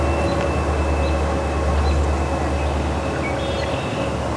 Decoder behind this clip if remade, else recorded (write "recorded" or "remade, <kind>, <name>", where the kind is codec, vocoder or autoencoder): recorded